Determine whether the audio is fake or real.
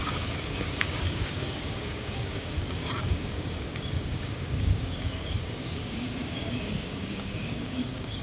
fake